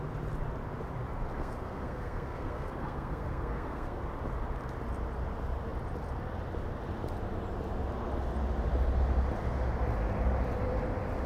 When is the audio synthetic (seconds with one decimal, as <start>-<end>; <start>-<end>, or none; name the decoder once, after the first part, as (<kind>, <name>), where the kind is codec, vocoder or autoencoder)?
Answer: 1.4-4.0 (codec, SNAC)